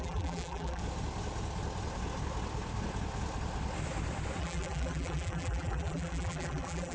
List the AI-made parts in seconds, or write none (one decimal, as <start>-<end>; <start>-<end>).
0.0-0.8; 4.4-6.9

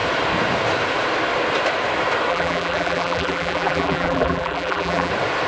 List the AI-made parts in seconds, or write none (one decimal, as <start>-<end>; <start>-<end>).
2.3-5.1

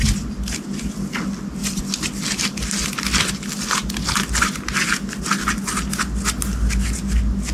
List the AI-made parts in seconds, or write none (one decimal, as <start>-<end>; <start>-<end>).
1.6-2.2